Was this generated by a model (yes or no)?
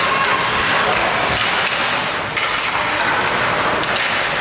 no